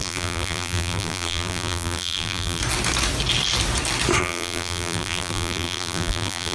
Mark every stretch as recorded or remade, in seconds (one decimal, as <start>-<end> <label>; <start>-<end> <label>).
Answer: 0.0-2.6 remade; 2.6-4.2 recorded; 4.2-6.5 remade